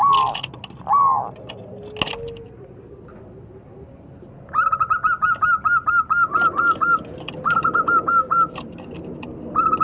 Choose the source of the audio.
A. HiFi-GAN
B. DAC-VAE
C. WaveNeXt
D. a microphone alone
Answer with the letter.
D